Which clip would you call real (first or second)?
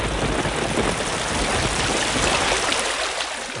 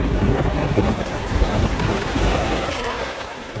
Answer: first